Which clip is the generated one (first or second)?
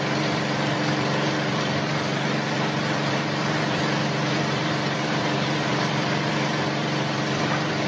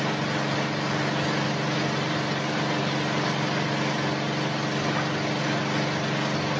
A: first